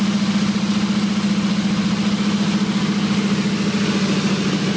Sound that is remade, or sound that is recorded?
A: recorded